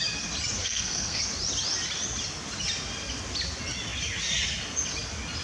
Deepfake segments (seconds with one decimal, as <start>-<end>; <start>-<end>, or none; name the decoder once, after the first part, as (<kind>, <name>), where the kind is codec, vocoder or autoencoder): 0.6-1.2 (codec, SNAC)